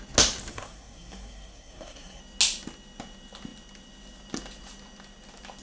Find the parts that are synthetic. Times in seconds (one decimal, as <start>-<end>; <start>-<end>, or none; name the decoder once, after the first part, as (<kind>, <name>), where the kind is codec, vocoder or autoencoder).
0.5-2.2 (codec, SNAC)